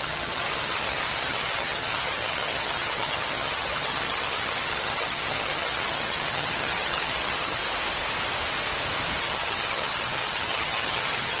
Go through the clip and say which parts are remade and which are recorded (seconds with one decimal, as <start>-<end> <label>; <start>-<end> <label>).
0.0-7.6 remade; 7.6-9.2 recorded; 9.2-11.4 remade